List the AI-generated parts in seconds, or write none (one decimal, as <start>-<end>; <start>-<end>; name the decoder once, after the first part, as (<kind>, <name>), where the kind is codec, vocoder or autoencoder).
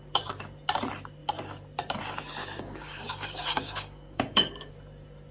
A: 2.4-4.7 (codec, DAC)